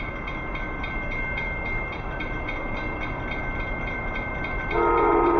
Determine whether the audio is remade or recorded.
recorded